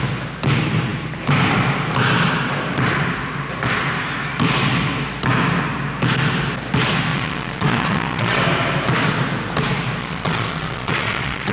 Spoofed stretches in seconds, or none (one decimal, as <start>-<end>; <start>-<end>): 7.1-8.4; 10.0-11.5